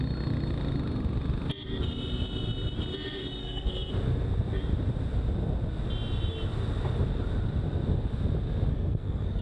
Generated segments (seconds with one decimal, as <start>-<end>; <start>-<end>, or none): 3.4-3.9; 8.7-9.4